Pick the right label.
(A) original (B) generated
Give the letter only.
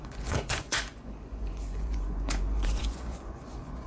B